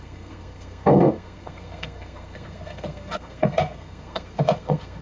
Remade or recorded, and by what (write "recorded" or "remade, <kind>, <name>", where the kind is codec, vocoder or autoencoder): remade, codec, SNAC